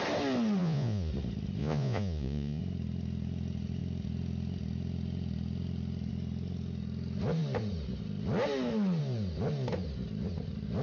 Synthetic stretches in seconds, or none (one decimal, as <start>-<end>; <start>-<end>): 0.6-1.1; 1.6-2.6